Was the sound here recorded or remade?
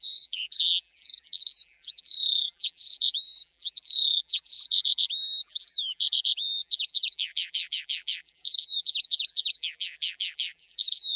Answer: remade